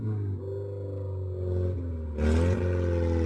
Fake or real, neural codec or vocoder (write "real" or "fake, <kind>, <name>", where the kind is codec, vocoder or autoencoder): real